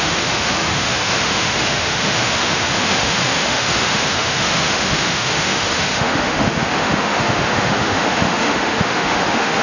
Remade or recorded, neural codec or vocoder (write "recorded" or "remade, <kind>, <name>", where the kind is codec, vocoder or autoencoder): remade, autoencoder, DAC-VAE